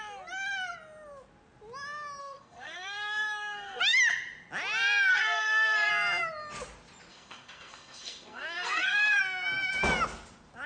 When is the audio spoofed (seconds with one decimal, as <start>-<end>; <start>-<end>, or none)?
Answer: 2.2-3.8; 5.1-5.9; 7.1-9.2